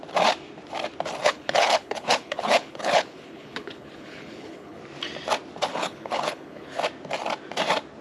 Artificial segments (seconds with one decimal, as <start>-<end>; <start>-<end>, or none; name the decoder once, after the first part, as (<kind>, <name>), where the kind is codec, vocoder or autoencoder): 1.2-4.8 (codec, HILCodec); 5.7-6.8